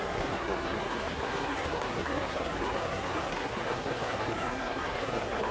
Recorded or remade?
remade